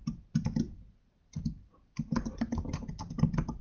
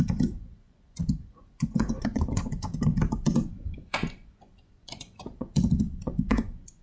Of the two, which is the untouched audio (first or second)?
first